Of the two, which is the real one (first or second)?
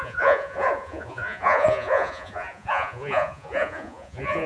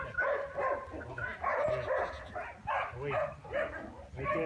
second